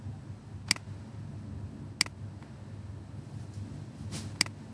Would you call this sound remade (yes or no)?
no